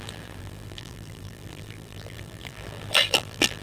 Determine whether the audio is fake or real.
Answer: fake